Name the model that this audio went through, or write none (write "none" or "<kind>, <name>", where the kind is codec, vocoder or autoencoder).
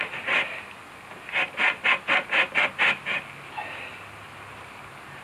none